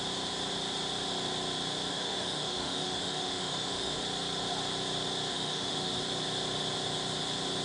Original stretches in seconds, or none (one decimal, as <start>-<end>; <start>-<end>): 0.0-1.9; 4.0-5.3; 6.0-7.6